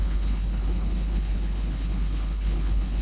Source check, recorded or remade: remade